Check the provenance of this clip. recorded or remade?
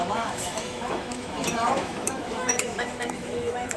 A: remade